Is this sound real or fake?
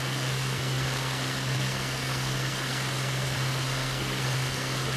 fake